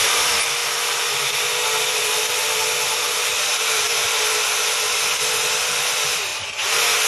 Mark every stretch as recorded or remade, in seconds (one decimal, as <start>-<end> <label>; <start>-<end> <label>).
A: 0.0-0.6 remade; 0.6-1.9 recorded; 1.9-6.3 remade; 6.3-7.1 recorded